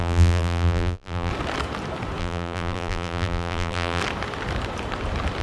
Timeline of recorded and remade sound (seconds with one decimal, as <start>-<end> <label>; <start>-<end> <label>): 0.0-1.3 remade; 1.3-2.2 recorded; 2.2-4.0 remade; 4.0-5.4 recorded